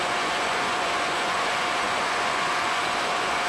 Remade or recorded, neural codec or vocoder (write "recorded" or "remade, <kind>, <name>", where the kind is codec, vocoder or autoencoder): remade, vocoder, Vocos